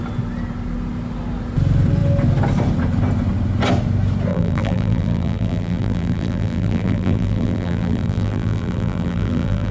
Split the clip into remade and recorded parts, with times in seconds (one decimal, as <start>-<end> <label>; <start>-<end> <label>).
0.0-4.3 recorded; 4.3-9.7 remade